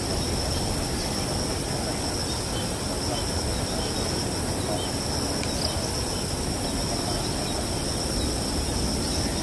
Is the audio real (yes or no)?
yes